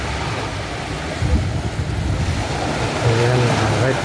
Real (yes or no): yes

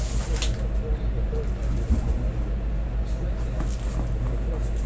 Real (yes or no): yes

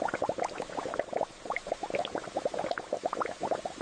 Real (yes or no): yes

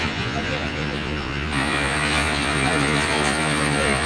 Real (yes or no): no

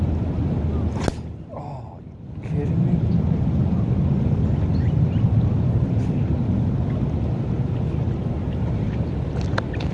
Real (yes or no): yes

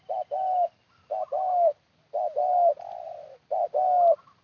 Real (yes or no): yes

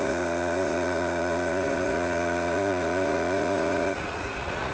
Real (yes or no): no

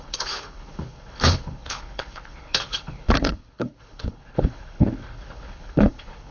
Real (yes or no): no